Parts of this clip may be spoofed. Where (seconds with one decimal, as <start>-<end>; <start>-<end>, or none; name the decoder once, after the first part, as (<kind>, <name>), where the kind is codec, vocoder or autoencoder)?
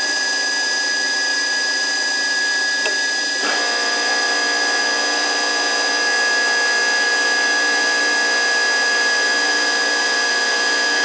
none